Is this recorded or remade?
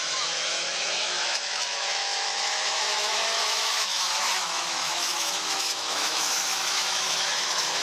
remade